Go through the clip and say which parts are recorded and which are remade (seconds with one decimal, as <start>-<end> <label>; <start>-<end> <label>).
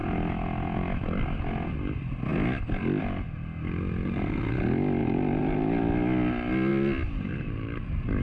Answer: 0.0-5.0 recorded; 5.0-5.8 remade; 5.8-8.2 recorded